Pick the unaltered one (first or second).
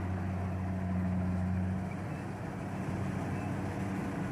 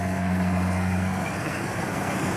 first